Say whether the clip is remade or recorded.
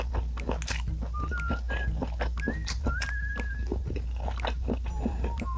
recorded